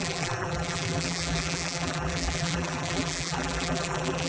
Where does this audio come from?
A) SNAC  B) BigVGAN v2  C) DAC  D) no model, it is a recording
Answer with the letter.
B